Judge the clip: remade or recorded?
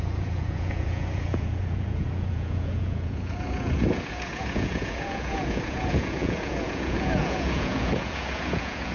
remade